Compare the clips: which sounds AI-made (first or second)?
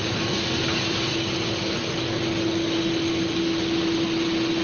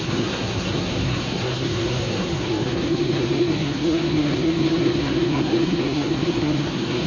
second